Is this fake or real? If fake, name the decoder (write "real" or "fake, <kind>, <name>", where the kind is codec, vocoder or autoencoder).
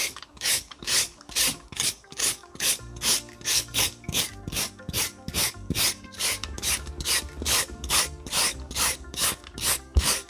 fake, codec, DAC